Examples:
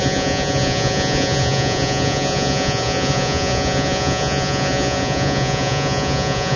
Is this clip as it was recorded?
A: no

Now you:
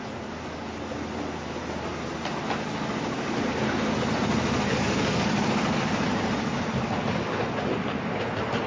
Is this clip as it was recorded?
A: yes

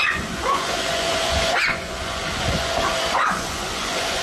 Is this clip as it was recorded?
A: no